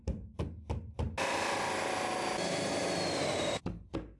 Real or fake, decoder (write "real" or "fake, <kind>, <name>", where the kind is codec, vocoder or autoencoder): real